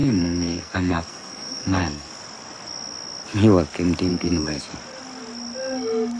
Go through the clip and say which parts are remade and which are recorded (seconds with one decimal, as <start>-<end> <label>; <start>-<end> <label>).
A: 0.0-2.1 remade; 2.1-4.1 recorded; 4.1-4.6 remade; 4.6-6.2 recorded